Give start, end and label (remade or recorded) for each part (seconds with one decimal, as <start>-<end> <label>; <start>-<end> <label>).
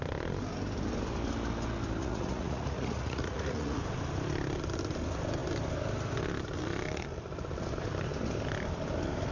0.0-2.0 recorded; 2.0-3.8 remade; 3.8-9.3 recorded